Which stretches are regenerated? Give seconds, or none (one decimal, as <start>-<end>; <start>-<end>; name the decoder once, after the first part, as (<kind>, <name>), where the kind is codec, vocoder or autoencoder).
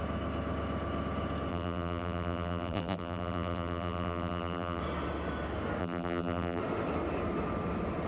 1.5-4.8 (vocoder, BigVGAN v2); 5.8-6.6